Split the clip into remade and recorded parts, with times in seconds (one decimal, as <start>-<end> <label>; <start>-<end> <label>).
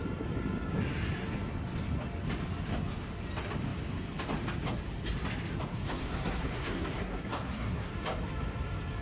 0.0-5.7 recorded; 5.7-7.9 remade; 7.9-9.0 recorded